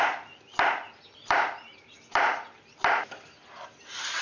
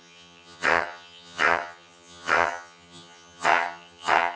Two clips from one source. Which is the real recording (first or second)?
first